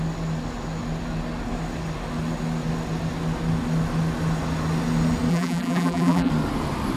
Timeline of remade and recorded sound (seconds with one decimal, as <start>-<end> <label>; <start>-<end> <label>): 0.0-5.3 recorded; 5.3-6.3 remade; 6.3-7.0 recorded